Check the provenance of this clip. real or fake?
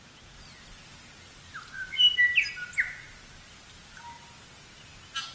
real